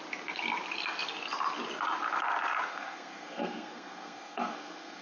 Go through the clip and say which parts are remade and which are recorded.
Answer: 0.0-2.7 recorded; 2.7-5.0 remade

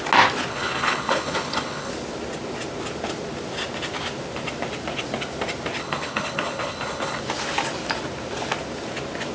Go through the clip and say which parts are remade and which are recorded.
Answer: 0.0-0.5 recorded; 0.5-1.9 remade; 1.9-5.8 recorded; 5.8-7.2 remade; 7.2-9.3 recorded